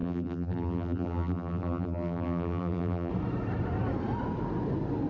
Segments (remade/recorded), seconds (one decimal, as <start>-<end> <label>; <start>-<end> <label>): 0.0-3.1 remade; 3.1-5.1 recorded